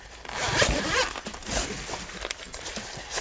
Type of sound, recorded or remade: recorded